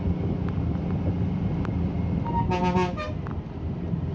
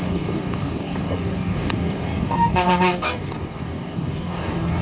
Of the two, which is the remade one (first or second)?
second